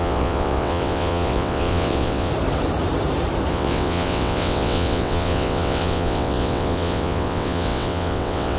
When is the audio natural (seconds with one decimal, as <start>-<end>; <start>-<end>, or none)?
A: 2.3-3.5